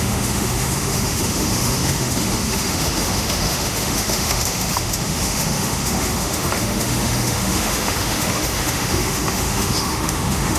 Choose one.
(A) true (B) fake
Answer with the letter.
B